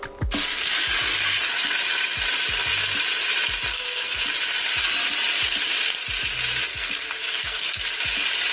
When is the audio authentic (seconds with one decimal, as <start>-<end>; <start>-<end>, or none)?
0.0-3.7; 4.2-6.7; 7.8-8.5